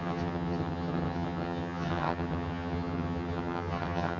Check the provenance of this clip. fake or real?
fake